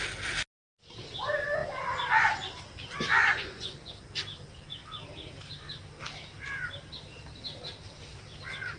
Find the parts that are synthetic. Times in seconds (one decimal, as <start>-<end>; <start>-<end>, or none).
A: 3.1-3.9